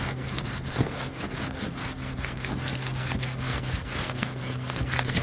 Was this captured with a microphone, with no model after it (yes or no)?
no